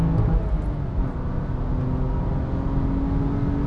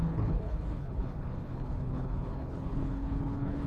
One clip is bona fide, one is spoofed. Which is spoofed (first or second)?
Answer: second